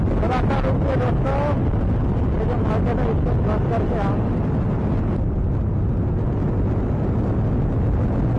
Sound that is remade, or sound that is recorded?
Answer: recorded